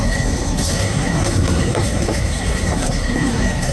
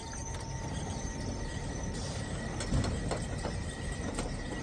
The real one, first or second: second